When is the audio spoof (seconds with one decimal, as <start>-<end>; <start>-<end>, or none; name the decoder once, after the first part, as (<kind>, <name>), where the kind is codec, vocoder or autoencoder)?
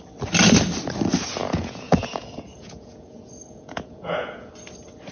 1.4-4.5 (vocoder, Vocos)